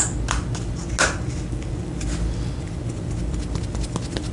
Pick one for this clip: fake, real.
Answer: real